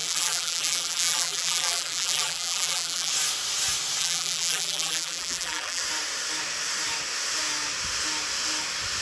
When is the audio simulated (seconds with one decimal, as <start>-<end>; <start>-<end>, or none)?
0.0-3.1; 4.0-5.8